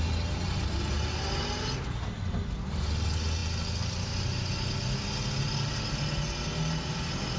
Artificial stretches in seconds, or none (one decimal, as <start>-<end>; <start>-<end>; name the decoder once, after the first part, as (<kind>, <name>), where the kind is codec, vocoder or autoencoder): none